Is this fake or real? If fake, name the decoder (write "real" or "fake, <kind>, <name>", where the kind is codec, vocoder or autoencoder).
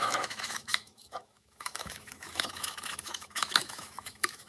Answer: fake, autoencoder, DAC-VAE